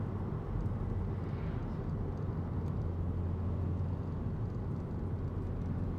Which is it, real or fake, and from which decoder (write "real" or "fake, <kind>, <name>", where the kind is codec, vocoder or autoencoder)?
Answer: real